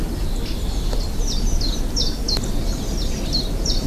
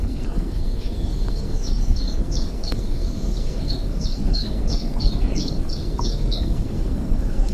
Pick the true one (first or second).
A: first